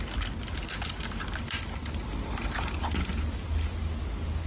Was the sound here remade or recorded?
recorded